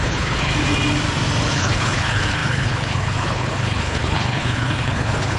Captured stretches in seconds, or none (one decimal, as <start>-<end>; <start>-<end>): 0.5-1.5